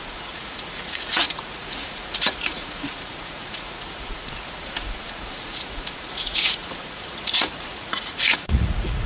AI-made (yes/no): yes